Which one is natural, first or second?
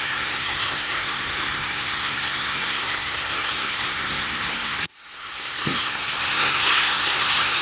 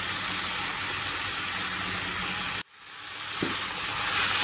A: second